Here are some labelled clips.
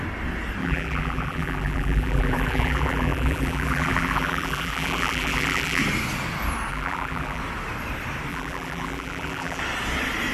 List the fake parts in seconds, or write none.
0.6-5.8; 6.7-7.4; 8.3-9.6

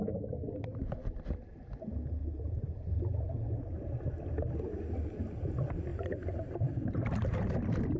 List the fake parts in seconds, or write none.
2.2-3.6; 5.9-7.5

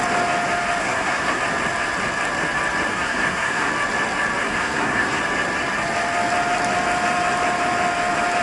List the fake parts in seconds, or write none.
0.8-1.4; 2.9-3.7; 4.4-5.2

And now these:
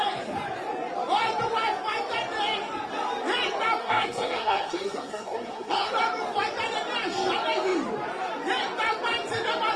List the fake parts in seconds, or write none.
3.8-5.9

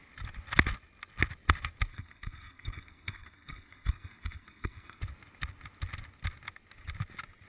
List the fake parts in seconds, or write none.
1.9-5.0